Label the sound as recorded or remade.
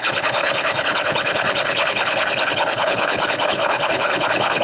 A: remade